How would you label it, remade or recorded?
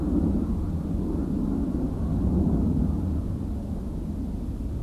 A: recorded